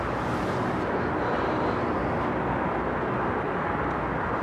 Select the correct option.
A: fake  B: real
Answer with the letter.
B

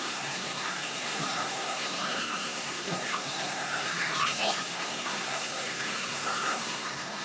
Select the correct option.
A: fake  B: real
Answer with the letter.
A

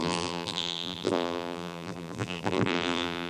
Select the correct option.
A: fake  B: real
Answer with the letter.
A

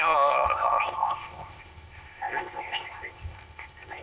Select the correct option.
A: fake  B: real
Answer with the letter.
A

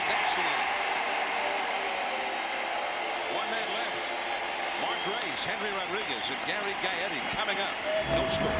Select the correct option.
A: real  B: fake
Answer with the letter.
A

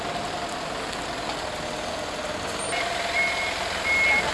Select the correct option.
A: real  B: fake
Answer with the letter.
A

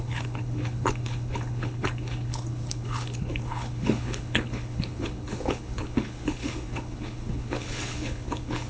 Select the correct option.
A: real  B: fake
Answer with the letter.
B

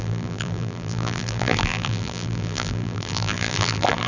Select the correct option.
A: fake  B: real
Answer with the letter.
A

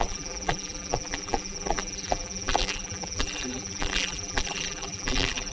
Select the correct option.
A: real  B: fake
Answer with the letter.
B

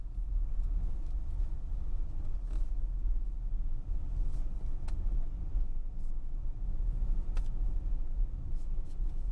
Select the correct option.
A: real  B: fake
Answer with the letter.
A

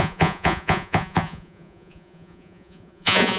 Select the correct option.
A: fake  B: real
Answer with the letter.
A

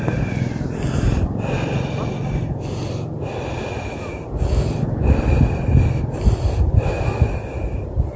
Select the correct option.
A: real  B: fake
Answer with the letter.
A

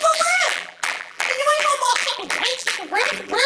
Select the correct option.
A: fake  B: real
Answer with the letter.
A